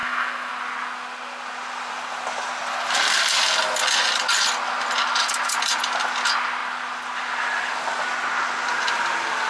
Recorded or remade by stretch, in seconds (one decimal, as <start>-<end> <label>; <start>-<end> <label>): 0.0-0.5 remade; 0.5-9.5 recorded